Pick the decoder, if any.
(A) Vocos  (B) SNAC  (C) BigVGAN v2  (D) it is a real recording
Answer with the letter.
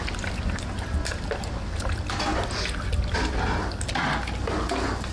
D